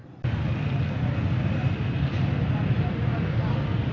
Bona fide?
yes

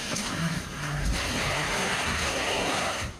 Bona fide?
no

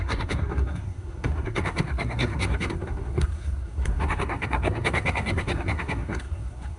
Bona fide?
no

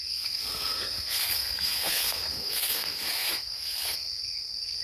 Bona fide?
no